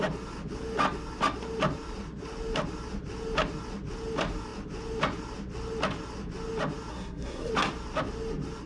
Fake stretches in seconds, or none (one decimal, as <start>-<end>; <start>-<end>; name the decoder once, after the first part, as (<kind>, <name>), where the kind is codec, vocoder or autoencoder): 6.9-7.5 (codec, SNAC)